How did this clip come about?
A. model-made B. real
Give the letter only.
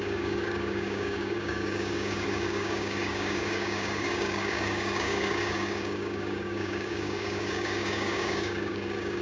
A